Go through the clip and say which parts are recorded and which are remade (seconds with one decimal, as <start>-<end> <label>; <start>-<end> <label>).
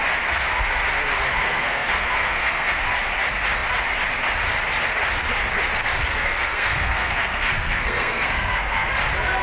0.0-1.3 recorded; 1.3-2.8 remade; 2.8-6.1 recorded; 6.1-8.9 remade; 8.9-9.4 recorded